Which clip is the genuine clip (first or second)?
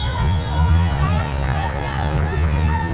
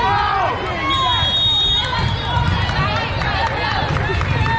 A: second